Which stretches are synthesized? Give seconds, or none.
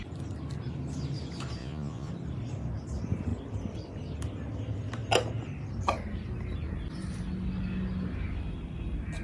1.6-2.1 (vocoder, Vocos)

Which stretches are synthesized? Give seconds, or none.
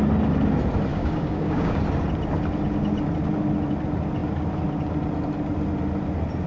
0.9-1.8 (codec, DAC)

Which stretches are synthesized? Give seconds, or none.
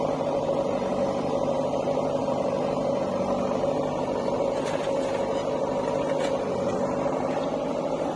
none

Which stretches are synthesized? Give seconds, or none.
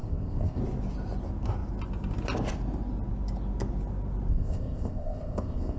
0.0-0.6 (codec, ZipCodec); 4.3-5.8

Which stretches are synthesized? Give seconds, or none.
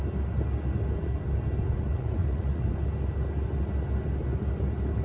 1.9-2.7 (vocoder, Vocos)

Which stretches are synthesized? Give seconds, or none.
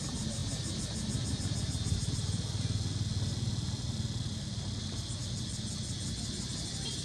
none